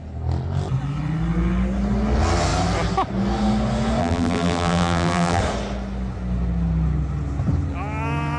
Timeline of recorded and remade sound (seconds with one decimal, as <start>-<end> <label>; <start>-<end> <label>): 0.0-4.0 recorded; 4.0-5.4 remade; 5.4-8.4 recorded